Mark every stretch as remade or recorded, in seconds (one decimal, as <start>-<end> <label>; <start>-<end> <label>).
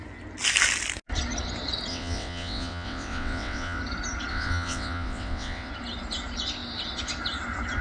0.0-1.9 recorded; 1.9-3.8 remade; 3.8-4.3 recorded; 4.3-5.7 remade; 5.7-7.8 recorded